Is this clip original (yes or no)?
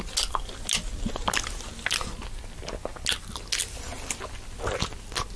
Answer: yes